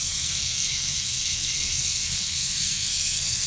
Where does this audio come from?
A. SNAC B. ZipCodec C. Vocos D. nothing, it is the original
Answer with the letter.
A